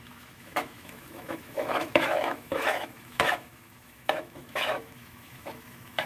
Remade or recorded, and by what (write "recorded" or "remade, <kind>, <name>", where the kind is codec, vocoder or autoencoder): remade, autoencoder, DAC-VAE